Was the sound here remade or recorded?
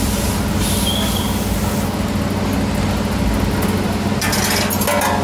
recorded